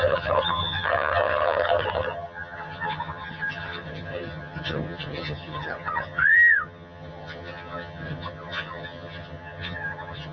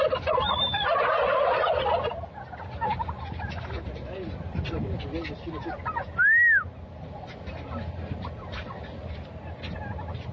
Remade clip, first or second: first